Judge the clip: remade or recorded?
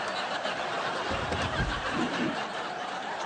recorded